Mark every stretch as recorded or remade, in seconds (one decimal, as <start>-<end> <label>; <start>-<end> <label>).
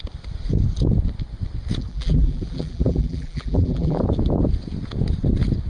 0.0-1.9 recorded; 1.9-4.0 remade; 4.0-5.7 recorded